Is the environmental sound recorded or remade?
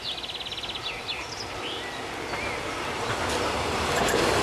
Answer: recorded